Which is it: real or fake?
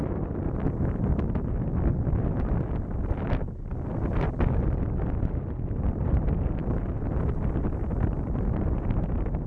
fake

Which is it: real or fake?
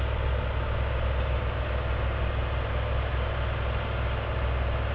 real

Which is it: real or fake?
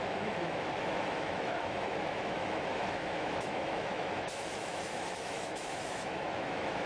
fake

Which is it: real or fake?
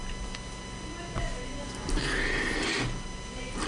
real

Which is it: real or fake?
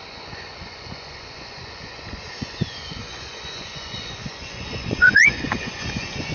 fake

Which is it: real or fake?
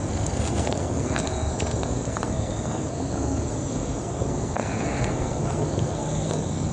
fake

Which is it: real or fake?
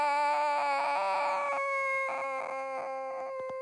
real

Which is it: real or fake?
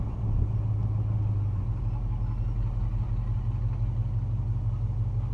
real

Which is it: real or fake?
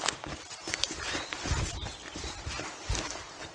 real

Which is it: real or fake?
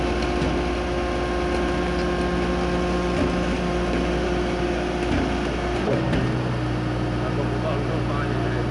real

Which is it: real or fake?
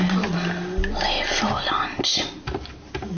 real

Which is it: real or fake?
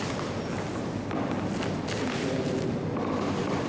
real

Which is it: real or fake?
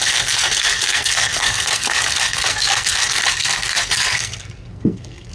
fake